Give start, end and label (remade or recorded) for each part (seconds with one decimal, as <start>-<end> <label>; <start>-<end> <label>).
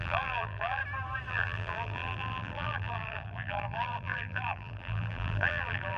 0.0-0.8 remade; 0.8-1.3 recorded; 1.3-6.0 remade